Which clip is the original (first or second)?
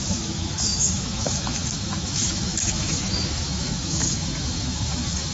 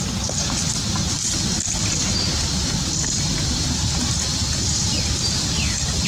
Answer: second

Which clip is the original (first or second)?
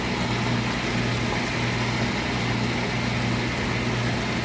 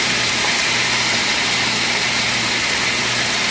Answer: first